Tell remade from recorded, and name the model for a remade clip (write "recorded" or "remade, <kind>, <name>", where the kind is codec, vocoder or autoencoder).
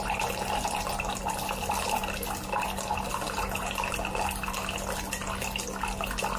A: recorded